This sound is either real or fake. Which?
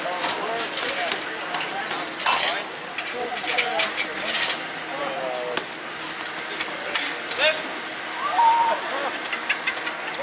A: real